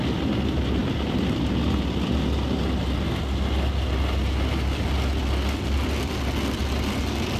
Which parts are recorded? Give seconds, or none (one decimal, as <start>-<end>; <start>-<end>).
0.0-7.4